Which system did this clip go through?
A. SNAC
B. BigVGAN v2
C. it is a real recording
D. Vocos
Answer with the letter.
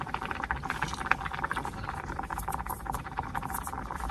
B